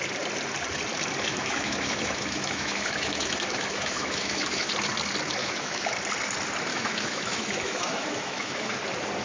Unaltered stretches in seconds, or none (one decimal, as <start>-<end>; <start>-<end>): 0.0-1.3; 4.7-5.4; 5.9-6.7; 8.7-9.2